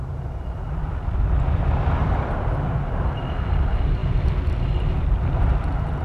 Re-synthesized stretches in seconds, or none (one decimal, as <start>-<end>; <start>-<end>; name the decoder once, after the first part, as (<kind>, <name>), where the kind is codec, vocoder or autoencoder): none